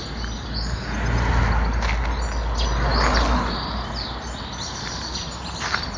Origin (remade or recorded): recorded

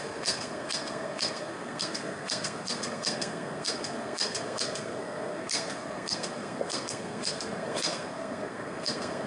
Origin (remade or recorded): remade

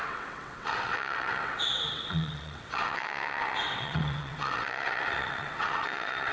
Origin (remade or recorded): remade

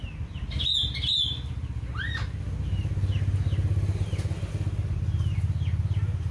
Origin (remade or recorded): recorded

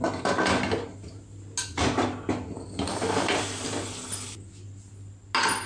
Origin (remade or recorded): recorded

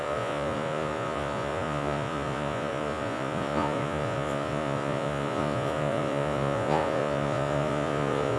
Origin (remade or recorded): remade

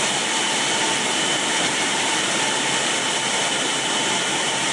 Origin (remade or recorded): recorded